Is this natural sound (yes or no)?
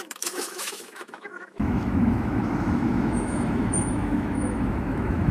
no